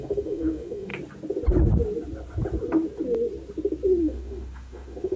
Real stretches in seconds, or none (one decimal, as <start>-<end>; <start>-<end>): 0.9-4.0